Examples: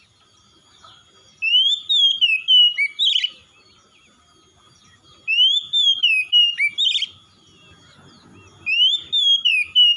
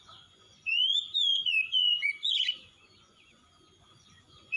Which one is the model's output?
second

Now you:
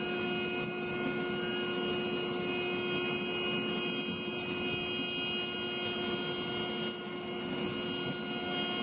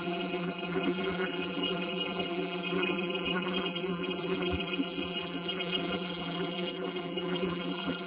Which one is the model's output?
second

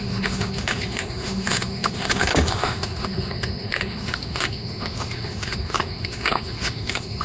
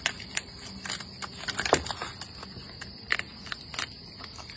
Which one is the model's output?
first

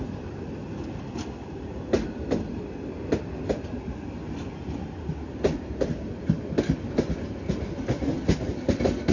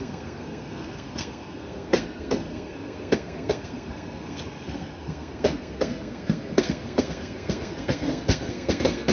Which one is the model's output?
second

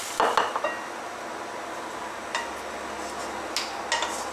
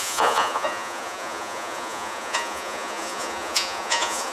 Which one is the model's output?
second